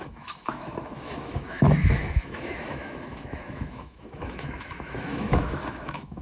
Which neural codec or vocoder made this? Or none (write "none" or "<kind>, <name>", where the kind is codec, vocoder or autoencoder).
autoencoder, DAC-VAE